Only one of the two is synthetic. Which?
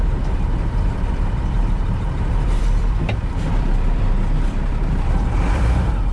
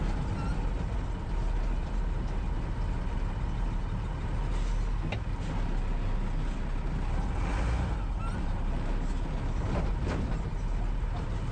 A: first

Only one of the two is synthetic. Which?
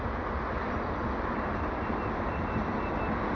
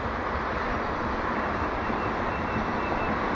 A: second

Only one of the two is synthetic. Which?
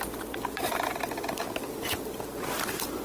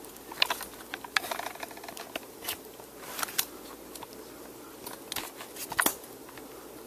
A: first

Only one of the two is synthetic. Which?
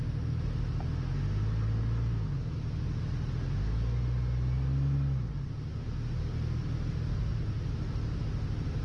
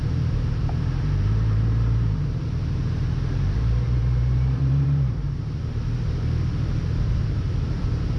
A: second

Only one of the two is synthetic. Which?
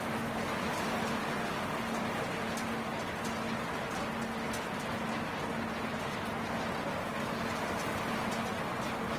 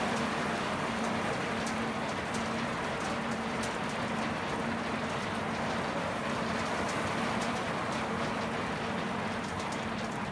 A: second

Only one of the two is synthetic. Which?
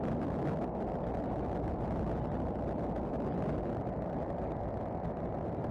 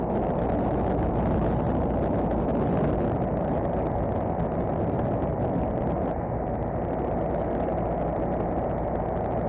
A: first